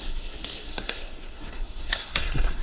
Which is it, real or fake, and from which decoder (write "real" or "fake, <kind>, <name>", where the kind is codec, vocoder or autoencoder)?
fake, codec, SNAC